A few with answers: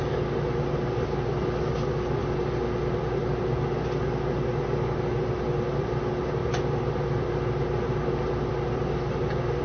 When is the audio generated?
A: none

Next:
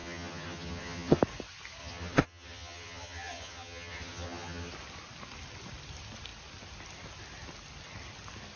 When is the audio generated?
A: 0.0-1.2 (vocoder, HiFi-GAN); 1.8-4.7

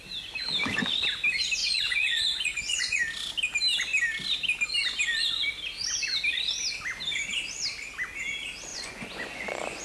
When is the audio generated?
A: 1.6-3.0 (vocoder, Vocos); 8.7-9.8

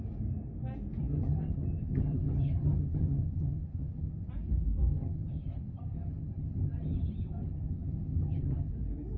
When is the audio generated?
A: 1.1-4.3 (vocoder, HiFi-GAN); 4.9-8.7

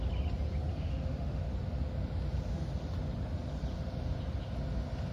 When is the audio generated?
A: 0.7-1.4 (autoencoder, DAC-VAE)